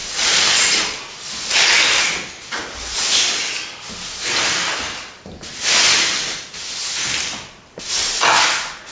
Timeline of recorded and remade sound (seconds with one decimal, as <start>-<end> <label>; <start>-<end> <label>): 0.0-8.9 recorded